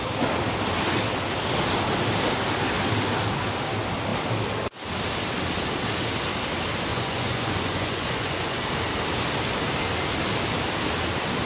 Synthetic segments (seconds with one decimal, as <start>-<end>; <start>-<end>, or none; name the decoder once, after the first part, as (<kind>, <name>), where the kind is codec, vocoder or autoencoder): 6.9-8.6 (vocoder, Vocos)